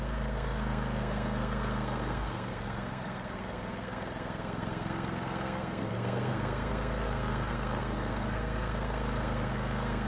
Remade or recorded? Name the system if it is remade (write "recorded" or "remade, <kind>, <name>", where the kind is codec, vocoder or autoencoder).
remade, codec, SNAC